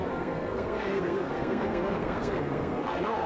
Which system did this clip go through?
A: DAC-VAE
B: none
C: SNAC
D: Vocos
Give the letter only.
C